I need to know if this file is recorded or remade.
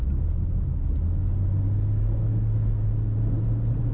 recorded